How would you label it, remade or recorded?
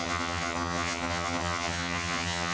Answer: remade